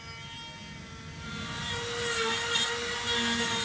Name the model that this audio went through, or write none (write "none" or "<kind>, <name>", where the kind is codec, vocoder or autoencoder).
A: none